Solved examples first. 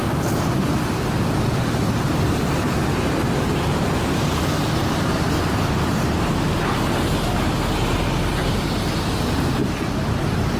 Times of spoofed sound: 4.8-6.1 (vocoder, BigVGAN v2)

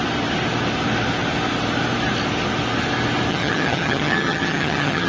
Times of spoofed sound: 3.3-5.1 (vocoder, HiFi-GAN)

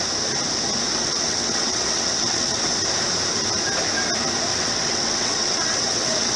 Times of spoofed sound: 0.9-2.7 (vocoder, WaveNeXt); 4.5-6.4

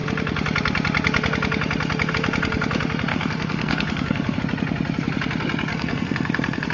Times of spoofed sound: 3.1-4.4 (codec, SNAC); 5.7-6.7

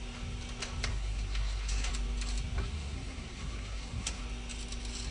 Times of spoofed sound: 0.9-1.9 (codec, SNAC); 2.6-4.2

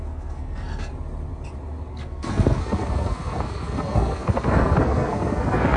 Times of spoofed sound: 0.0-0.9 (codec, SNAC); 1.9-5.8